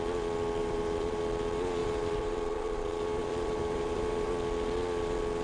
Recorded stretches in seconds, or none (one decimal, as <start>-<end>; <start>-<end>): 0.0-0.6; 1.2-1.8; 4.3-5.4